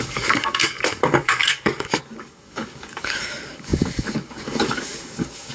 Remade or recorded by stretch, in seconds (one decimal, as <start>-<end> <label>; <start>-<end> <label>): 0.0-5.5 remade